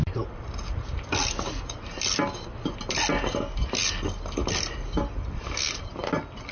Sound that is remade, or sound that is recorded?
recorded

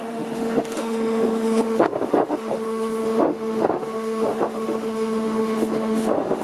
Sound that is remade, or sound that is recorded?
remade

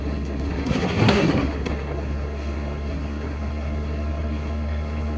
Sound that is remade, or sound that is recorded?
remade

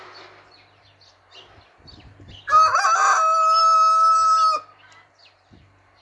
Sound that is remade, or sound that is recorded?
recorded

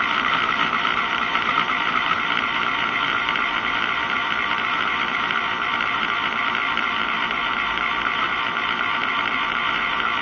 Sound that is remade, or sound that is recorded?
remade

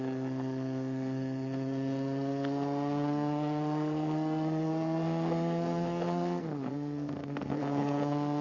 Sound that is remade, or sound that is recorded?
remade